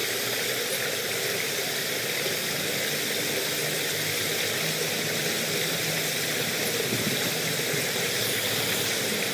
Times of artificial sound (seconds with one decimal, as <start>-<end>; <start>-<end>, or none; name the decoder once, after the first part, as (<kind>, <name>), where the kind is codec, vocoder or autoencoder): none